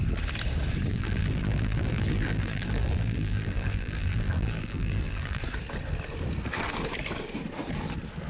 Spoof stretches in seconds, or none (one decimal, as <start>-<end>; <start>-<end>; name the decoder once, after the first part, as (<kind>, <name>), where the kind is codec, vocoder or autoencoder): 0.9-5.4 (vocoder, BigVGAN v2)